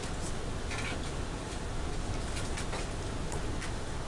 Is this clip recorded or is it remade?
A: recorded